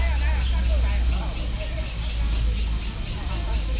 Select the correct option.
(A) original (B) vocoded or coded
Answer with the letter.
A